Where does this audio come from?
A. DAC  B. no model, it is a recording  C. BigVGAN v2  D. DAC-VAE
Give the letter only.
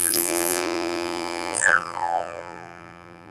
C